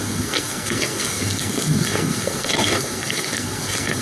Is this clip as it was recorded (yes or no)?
no